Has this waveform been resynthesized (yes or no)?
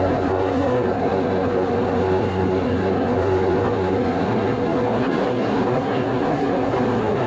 yes